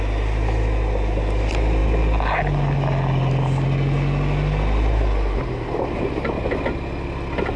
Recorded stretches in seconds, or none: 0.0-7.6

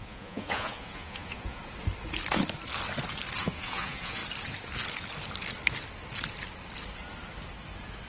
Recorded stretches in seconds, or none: 1.6-3.4; 4.2-8.1